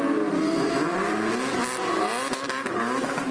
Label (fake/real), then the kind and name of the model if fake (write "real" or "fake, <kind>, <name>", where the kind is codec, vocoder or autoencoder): real